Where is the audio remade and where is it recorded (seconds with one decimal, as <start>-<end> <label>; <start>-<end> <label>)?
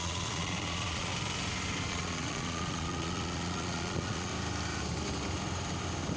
0.0-1.1 remade; 1.1-1.9 recorded; 1.9-4.3 remade; 4.3-6.2 recorded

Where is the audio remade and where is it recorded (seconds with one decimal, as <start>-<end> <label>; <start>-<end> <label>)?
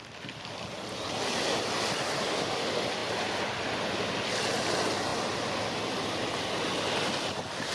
0.0-5.1 recorded; 5.1-5.7 remade; 5.7-7.7 recorded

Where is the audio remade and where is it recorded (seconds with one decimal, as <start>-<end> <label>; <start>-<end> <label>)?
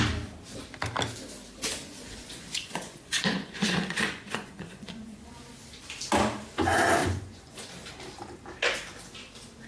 0.0-1.8 recorded; 1.8-5.3 remade; 5.3-7.0 recorded; 7.0-7.7 remade; 7.7-9.7 recorded